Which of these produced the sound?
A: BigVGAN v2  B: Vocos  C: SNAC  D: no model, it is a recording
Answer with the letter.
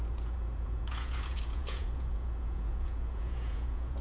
B